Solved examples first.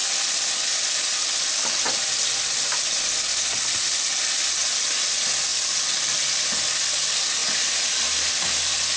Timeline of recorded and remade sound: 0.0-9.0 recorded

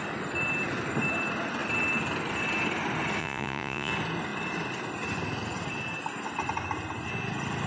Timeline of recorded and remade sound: 0.0-3.2 recorded; 3.2-3.9 remade; 3.9-7.7 recorded

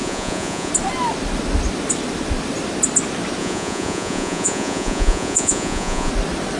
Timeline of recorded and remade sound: 0.0-0.7 remade; 0.7-3.4 recorded; 3.4-6.1 remade; 6.1-6.6 recorded

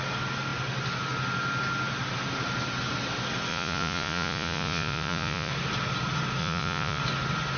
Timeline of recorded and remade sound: 0.0-3.5 recorded; 3.5-5.5 remade; 5.5-6.4 recorded; 6.4-7.0 remade; 7.0-7.6 recorded

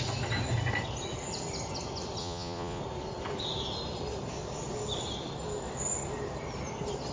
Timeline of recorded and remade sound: 0.0-2.2 recorded; 2.2-2.8 remade; 2.8-7.1 recorded

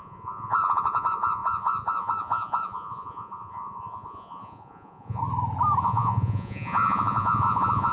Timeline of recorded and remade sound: 0.0-5.2 remade; 5.2-5.8 recorded; 5.8-7.9 remade

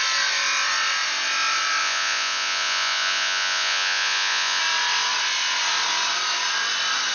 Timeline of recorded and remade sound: 0.0-1.8 recorded; 1.8-4.6 remade; 4.6-7.1 recorded

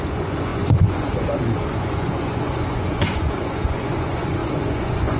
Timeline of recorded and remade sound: 0.0-5.2 remade